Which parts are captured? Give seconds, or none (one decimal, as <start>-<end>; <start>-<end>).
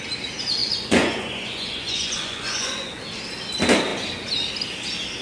0.0-0.6; 3.0-5.2